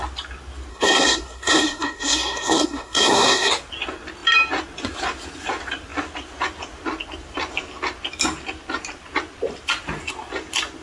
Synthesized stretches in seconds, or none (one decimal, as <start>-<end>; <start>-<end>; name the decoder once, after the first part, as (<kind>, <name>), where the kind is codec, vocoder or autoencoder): 0.7-3.5 (codec, SNAC)